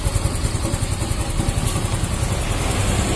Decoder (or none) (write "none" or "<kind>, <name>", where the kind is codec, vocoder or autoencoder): none